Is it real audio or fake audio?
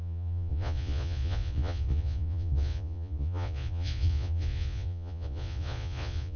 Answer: fake